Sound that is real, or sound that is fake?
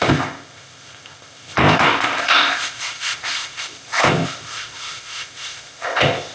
fake